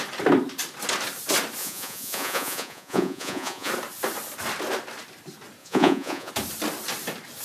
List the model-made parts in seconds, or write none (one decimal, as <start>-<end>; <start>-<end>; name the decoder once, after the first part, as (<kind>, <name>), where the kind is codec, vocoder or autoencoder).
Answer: 1.6-3.7 (vocoder, Vocos); 5.6-6.3

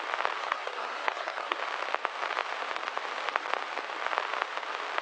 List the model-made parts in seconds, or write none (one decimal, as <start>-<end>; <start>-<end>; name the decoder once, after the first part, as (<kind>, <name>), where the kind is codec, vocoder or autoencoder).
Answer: 0.4-1.6 (codec, SNAC)